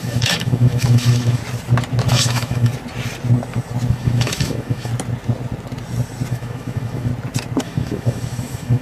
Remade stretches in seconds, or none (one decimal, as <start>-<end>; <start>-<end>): 0.0-1.4; 2.1-2.7; 3.9-4.9; 6.3-7.1; 7.6-8.8